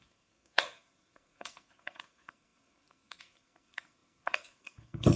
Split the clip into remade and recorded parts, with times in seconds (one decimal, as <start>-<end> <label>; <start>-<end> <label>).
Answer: 0.0-5.2 remade